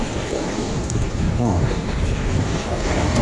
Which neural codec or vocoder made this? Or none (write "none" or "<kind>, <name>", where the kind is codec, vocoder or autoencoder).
codec, DAC